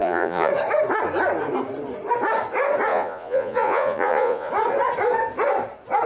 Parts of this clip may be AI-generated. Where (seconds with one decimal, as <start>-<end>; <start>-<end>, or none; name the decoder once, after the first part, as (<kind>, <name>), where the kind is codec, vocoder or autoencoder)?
0.0-0.5 (vocoder, Vocos); 2.9-4.5